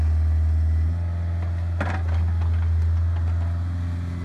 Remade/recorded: recorded